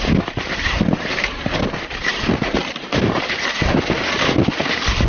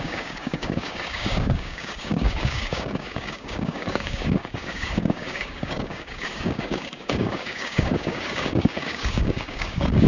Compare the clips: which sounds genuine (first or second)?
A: first